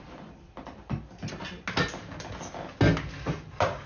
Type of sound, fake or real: real